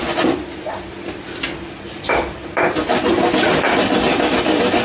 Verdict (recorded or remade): recorded